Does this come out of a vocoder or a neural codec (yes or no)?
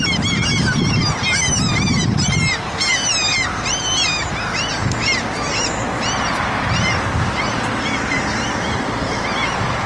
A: no